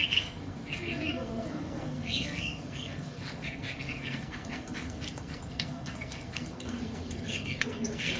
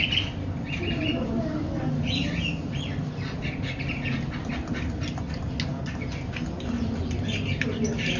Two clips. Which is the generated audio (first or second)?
first